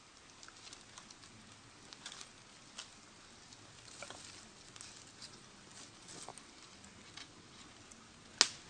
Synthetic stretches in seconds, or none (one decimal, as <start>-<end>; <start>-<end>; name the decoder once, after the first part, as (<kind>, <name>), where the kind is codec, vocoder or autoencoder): none